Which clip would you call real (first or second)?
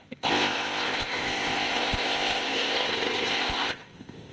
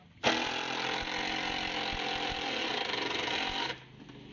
second